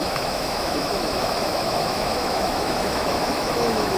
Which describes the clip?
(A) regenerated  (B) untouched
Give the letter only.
A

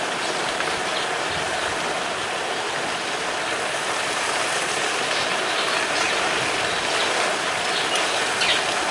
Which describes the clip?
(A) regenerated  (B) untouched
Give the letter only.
B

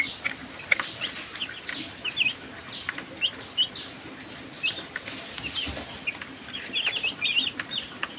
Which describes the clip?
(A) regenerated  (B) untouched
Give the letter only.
B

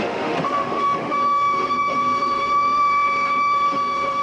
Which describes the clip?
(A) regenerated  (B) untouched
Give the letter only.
A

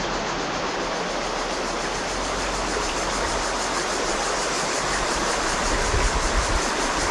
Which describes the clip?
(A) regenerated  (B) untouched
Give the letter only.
B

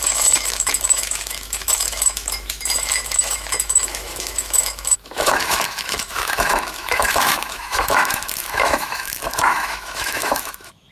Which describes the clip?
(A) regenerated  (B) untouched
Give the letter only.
A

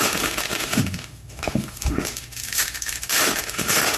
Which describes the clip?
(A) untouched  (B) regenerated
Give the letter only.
B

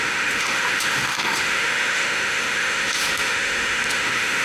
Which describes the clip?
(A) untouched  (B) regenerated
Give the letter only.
B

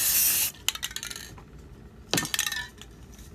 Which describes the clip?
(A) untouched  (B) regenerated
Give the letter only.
A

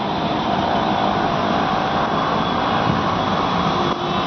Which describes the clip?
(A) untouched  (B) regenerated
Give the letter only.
A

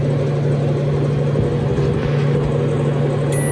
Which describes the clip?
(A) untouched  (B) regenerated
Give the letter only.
A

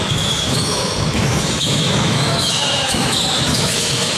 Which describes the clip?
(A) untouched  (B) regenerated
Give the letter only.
B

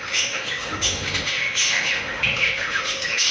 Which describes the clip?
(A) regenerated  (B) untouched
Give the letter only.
A